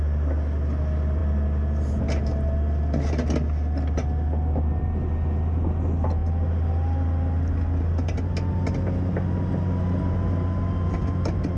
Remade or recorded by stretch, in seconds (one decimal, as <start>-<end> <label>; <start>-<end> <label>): 0.0-11.6 recorded